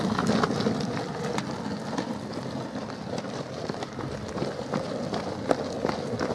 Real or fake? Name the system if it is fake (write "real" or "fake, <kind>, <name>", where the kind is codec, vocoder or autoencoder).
real